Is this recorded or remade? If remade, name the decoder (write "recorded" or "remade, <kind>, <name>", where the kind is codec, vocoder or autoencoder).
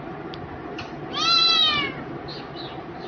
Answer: recorded